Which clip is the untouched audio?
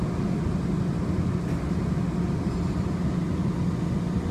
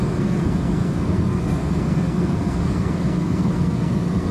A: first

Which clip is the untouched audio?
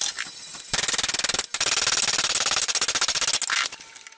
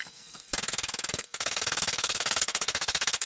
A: first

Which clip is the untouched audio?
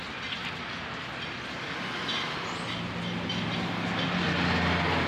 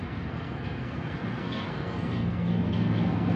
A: first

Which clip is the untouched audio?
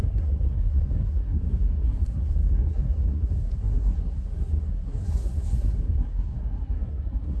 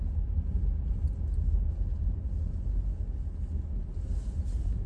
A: second